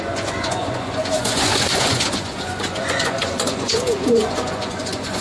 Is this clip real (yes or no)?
no